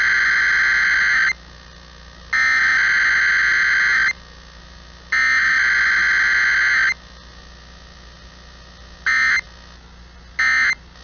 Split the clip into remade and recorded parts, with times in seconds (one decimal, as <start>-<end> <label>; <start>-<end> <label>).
0.0-11.0 recorded